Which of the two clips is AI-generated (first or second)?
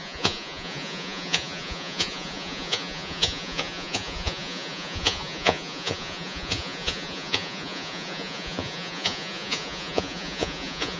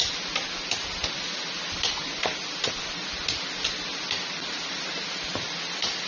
first